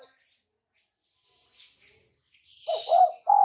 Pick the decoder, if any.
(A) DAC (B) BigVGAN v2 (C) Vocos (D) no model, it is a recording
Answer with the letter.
D